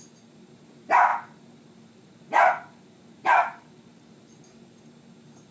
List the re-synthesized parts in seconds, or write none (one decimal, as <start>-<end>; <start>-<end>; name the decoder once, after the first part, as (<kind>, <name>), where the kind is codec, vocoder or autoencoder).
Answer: 1.1-4.4 (vocoder, BigVGAN v2)